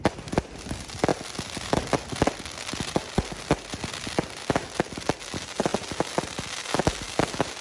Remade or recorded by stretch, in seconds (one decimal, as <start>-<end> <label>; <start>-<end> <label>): 0.0-7.6 recorded